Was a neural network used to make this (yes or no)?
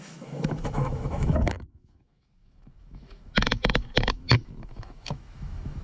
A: yes